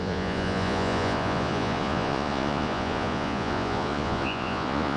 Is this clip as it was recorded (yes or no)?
no